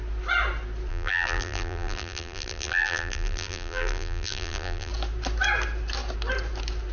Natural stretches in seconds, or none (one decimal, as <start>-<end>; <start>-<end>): 0.0-0.9; 4.9-6.9